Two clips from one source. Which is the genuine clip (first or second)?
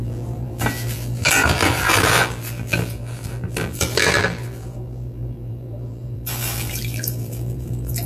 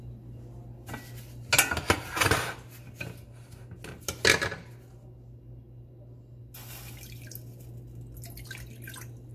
second